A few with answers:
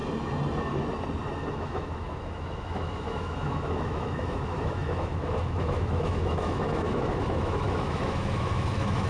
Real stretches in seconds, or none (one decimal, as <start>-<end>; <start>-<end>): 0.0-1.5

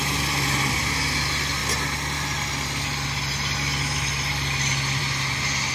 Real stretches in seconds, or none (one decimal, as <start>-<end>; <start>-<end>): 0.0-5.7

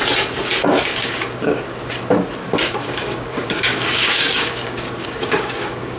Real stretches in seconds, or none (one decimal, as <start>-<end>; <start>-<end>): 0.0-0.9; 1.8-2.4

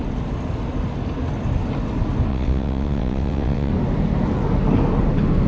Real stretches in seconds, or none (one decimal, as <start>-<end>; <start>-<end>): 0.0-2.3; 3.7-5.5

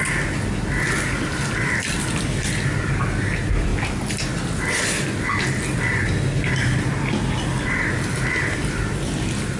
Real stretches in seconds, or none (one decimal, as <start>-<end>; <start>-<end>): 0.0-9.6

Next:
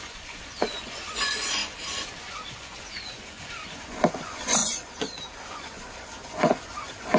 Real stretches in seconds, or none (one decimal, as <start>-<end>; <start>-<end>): none